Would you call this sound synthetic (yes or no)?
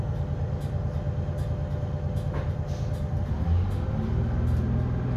no